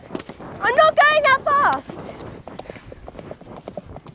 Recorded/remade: recorded